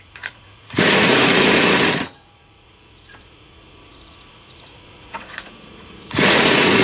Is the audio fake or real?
fake